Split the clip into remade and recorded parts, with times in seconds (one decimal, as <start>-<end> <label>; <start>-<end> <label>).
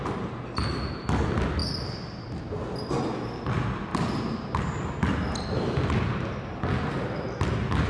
0.0-7.9 recorded